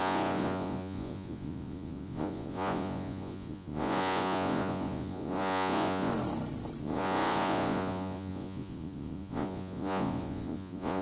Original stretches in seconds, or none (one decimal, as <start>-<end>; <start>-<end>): 6.1-6.8